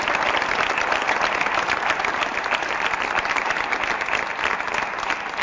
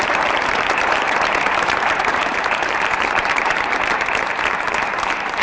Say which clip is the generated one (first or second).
second